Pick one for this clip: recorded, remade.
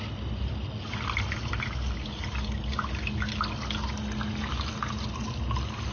recorded